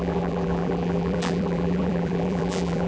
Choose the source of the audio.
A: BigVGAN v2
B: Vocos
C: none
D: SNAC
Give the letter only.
A